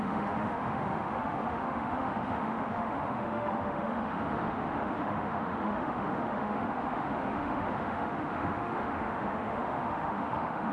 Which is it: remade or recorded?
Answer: remade